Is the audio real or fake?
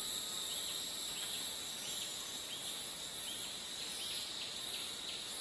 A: real